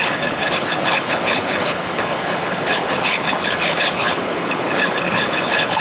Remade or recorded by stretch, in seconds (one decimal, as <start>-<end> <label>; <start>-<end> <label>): 0.0-5.8 remade